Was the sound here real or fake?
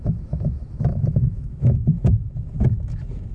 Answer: fake